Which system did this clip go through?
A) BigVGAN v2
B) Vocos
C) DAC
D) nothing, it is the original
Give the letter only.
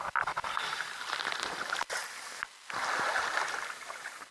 D